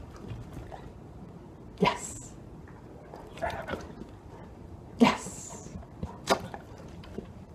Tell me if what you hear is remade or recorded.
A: remade